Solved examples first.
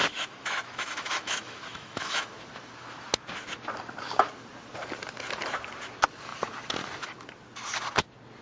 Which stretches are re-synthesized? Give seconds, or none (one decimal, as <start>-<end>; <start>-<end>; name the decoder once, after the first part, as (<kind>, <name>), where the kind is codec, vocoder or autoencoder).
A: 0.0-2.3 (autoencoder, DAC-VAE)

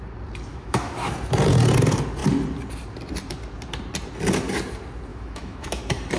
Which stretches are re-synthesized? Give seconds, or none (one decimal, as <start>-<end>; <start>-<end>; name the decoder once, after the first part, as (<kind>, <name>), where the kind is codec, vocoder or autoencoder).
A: 0.5-1.1 (autoencoder, DAC-VAE); 5.1-5.8

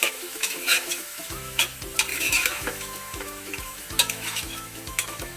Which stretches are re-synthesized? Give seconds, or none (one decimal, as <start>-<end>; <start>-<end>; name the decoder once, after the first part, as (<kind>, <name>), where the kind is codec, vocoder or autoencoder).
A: 0.0-1.6 (autoencoder, DAC-VAE); 2.1-5.4

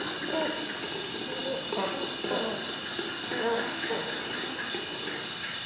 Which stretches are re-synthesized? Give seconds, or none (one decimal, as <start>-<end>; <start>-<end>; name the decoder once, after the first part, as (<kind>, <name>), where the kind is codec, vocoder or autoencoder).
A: 3.4-4.1 (autoencoder, DAC-VAE)

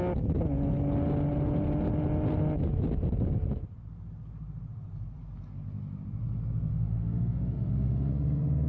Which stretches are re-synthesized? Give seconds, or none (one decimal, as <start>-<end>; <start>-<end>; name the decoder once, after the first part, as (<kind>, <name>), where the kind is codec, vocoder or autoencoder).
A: 6.7-8.1 (autoencoder, DAC-VAE)

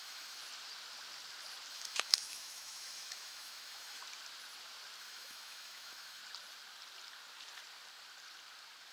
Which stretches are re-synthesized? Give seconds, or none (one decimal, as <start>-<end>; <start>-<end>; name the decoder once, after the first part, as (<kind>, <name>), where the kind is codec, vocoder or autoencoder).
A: 0.0-0.4 (autoencoder, DAC-VAE); 1.7-4.0; 5.0-6.2

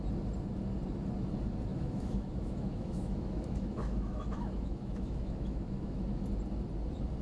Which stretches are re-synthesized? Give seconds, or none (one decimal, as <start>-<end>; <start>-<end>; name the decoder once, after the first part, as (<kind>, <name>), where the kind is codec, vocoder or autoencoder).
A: 1.7-6.0 (autoencoder, DAC-VAE)